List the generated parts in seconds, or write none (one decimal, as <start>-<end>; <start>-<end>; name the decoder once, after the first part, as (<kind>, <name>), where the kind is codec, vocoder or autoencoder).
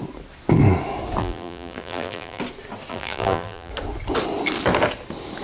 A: 1.2-2.4 (vocoder, BigVGAN v2); 2.9-3.7